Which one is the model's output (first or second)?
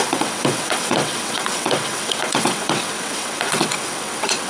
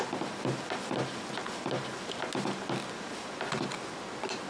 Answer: first